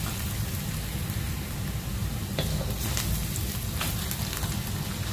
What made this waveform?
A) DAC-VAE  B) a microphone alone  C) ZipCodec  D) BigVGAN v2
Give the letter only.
B